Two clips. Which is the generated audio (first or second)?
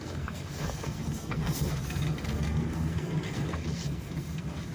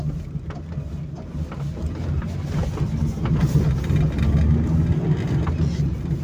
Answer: first